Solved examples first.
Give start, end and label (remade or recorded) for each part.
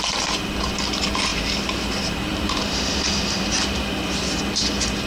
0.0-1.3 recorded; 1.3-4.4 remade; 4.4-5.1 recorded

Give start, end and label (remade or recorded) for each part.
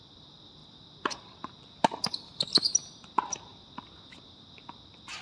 0.0-5.2 recorded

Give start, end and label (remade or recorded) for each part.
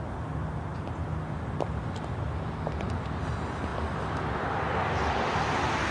0.0-0.7 recorded; 0.7-2.2 remade; 2.2-3.7 recorded; 3.7-4.6 remade; 4.6-5.9 recorded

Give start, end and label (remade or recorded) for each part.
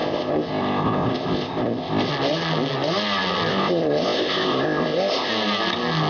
0.0-2.1 remade; 2.1-3.5 recorded; 3.5-5.3 remade; 5.3-6.1 recorded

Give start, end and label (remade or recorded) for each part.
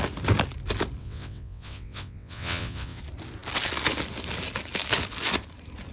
0.0-1.0 recorded; 1.0-3.0 remade; 3.0-5.9 recorded